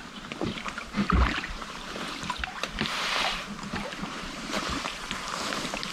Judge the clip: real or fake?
fake